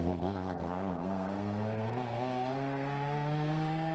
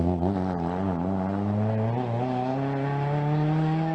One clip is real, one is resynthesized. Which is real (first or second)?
second